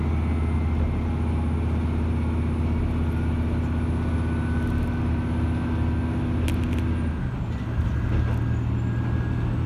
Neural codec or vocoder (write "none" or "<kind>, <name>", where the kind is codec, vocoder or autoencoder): none